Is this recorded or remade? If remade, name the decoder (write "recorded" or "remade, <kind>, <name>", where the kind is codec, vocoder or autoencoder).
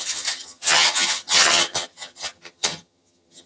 remade, vocoder, HiFi-GAN